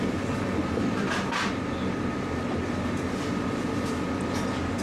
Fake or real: real